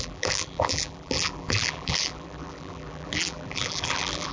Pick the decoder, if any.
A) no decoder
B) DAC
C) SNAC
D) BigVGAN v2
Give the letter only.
D